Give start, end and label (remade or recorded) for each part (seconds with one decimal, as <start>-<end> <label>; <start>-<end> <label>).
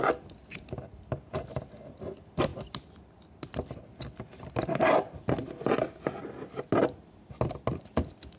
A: 0.0-8.4 recorded